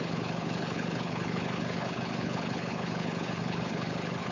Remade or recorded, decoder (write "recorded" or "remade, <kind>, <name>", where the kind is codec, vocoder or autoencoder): remade, codec, HILCodec